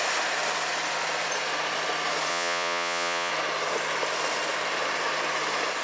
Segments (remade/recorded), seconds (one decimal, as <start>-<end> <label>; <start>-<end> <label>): 0.0-2.3 recorded; 2.3-3.3 remade; 3.3-5.8 recorded